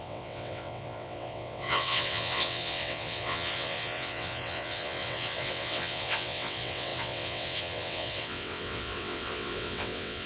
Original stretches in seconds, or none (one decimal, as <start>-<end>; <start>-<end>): none